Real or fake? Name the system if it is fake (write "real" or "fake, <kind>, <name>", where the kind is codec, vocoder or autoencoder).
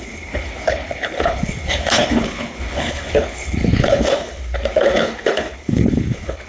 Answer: fake, codec, HILCodec